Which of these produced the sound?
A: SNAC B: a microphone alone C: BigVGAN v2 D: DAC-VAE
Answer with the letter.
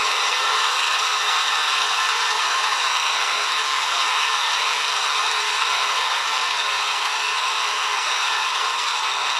A